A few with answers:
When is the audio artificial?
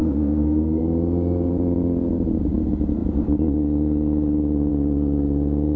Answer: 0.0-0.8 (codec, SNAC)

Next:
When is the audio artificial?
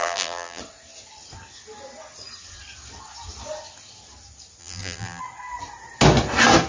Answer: 0.0-0.6 (vocoder, BigVGAN v2); 4.6-5.2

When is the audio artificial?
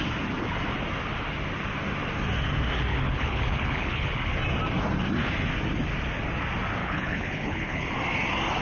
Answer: 2.9-4.3 (codec, HILCodec); 6.8-7.9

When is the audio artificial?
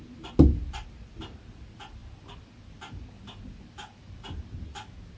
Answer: none